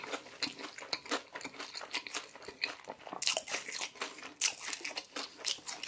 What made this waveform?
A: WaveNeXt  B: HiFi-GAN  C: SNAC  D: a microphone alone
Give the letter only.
D